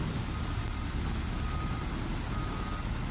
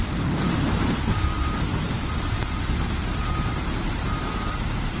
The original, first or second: first